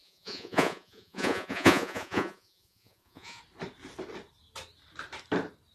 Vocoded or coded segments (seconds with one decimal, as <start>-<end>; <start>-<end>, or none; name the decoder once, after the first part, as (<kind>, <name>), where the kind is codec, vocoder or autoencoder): 0.0-3.4 (vocoder, Vocos)